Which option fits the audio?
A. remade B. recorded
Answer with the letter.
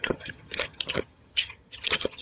A